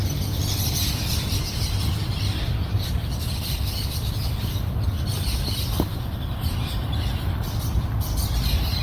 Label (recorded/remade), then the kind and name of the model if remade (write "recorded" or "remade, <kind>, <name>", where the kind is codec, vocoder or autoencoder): recorded